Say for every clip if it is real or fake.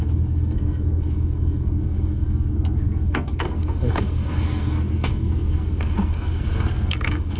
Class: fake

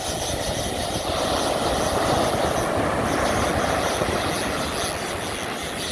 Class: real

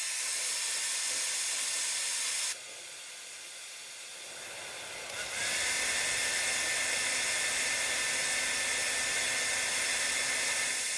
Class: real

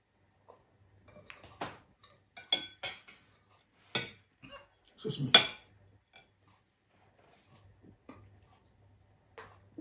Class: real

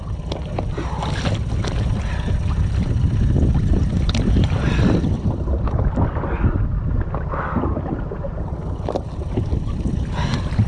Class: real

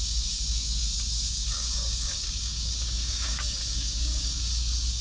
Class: fake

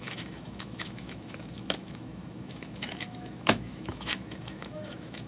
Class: fake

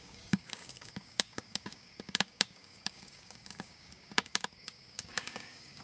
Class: fake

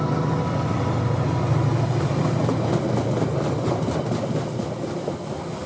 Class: real